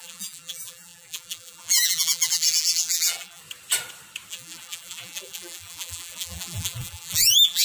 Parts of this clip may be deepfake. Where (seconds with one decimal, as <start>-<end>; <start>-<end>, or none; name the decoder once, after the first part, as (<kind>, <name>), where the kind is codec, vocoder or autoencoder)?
0.0-3.4 (vocoder, BigVGAN v2); 4.3-7.6